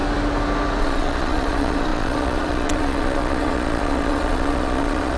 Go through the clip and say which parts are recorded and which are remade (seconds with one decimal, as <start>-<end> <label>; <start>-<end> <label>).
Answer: 0.0-0.8 recorded; 0.8-5.2 remade